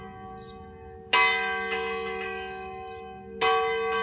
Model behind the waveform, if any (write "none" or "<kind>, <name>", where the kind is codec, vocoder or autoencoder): none